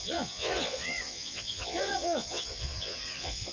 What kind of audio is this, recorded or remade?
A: remade